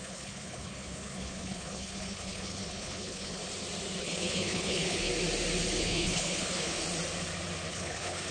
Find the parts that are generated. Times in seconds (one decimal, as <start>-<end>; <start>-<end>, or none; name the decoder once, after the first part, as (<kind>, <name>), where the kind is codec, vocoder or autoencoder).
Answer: 0.0-3.4 (codec, HILCodec); 4.0-5.1; 5.8-6.8; 7.7-8.3

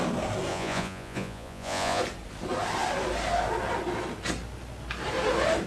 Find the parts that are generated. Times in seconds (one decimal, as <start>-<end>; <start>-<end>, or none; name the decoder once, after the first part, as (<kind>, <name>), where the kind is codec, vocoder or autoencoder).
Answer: 0.5-2.0 (vocoder, Vocos)